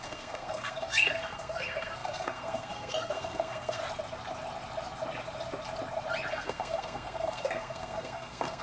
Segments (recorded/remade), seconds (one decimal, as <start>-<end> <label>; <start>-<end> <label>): 0.0-3.8 remade; 3.8-6.3 recorded; 6.3-8.6 remade